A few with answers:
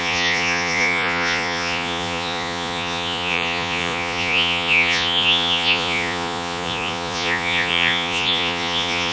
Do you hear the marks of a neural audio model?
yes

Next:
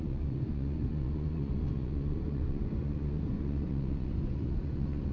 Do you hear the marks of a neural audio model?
yes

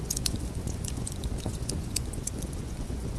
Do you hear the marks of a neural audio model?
yes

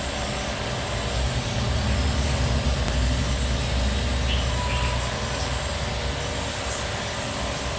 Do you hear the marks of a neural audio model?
no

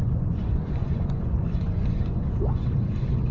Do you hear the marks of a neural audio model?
yes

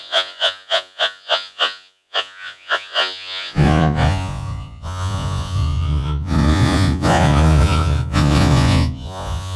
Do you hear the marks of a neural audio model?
yes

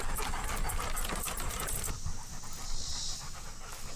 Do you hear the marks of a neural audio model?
no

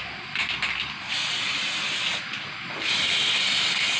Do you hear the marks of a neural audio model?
no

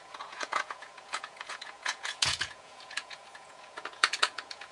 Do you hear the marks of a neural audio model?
yes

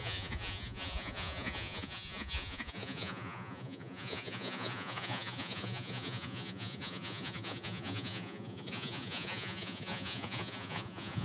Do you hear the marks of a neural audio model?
yes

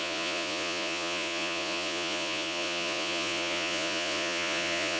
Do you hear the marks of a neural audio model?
yes